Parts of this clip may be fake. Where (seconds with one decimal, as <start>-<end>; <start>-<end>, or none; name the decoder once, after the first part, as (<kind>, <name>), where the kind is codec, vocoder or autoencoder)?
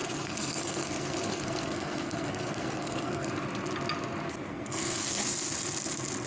0.0-3.3 (codec, SNAC); 4.5-5.2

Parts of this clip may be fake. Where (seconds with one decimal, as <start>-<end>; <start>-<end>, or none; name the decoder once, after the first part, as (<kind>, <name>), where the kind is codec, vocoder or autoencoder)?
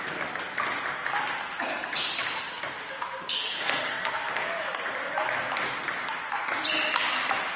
3.4-4.5 (codec, SNAC)